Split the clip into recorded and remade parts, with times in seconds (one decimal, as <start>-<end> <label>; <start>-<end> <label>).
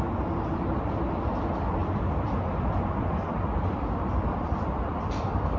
0.0-1.8 recorded; 1.8-5.6 remade